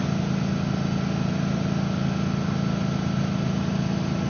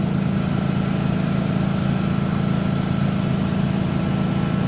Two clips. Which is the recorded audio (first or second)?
first